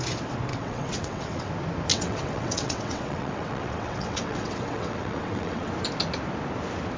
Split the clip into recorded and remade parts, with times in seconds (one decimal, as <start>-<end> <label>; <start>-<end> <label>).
0.0-0.5 recorded; 0.5-1.5 remade; 1.5-1.9 recorded; 1.9-5.7 remade; 5.7-7.0 recorded